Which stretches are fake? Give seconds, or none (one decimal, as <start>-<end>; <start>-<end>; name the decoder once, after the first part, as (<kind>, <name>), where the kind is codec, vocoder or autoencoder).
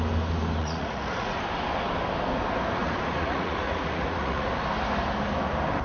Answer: 0.6-1.4 (vocoder, Vocos); 2.8-4.5